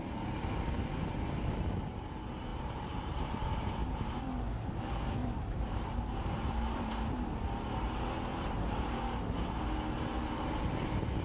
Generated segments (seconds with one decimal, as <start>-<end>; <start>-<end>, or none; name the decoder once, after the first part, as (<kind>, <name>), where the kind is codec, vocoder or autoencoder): 2.5-4.2 (vocoder, BigVGAN v2); 5.2-7.1; 8.3-9.0